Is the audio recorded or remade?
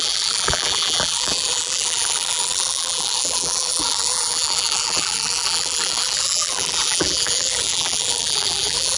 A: remade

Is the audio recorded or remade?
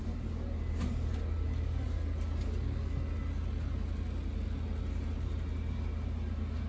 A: recorded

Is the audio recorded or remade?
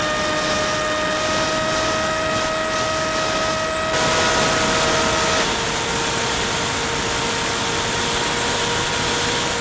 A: recorded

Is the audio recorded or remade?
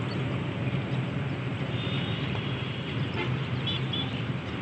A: remade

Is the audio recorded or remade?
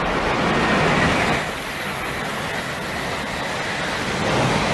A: recorded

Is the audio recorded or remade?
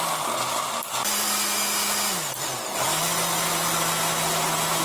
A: recorded